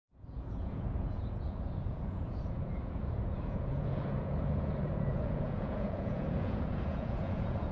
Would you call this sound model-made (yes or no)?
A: yes